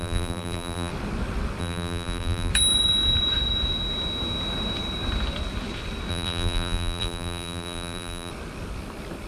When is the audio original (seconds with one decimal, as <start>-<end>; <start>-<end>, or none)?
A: 0.9-1.6; 2.5-6.1; 8.3-9.3